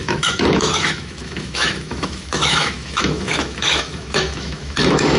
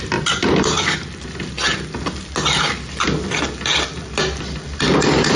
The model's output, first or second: first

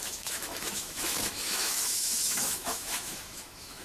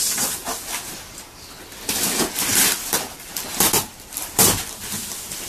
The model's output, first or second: first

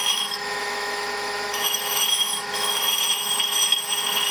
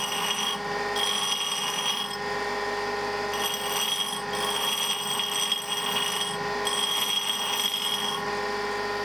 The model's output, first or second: first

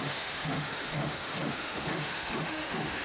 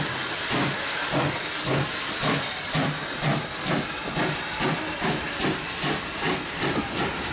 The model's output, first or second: first